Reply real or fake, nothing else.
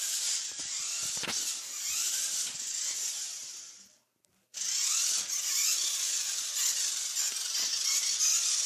real